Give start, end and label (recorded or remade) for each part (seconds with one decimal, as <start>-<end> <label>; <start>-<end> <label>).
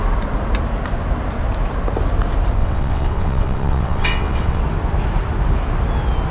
0.0-2.6 recorded; 2.6-4.6 remade; 4.6-6.3 recorded